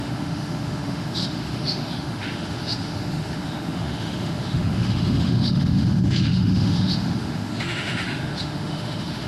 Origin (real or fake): fake